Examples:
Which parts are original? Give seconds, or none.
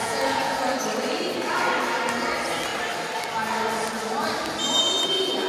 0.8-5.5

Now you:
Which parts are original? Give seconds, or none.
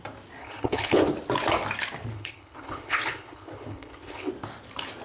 0.0-0.4; 1.0-2.1; 4.3-5.0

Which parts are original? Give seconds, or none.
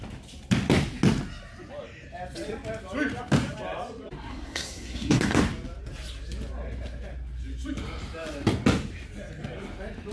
0.0-4.3; 5.4-10.1